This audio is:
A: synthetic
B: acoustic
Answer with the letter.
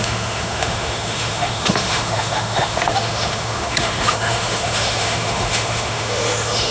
A